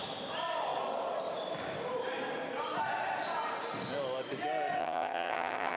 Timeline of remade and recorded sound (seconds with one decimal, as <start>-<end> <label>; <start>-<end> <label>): 0.0-4.8 recorded; 4.8-5.8 remade